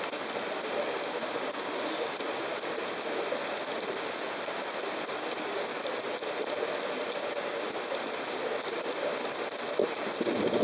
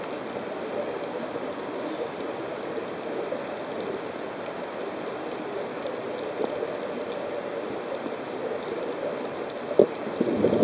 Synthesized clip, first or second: second